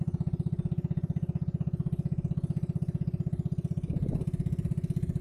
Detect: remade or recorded recorded